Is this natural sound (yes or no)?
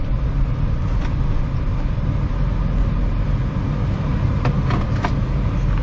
yes